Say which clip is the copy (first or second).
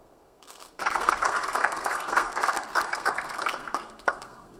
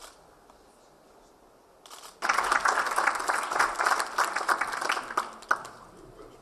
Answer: first